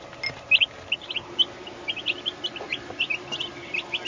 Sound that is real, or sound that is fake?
real